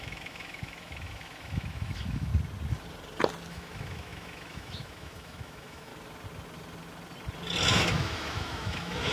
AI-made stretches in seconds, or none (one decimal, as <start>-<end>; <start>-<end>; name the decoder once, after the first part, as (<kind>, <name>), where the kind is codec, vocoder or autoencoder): 0.0-2.3 (autoencoder, DAC-VAE); 3.5-5.9; 7.7-9.1